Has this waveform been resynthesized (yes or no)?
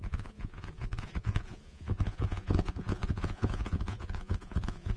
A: yes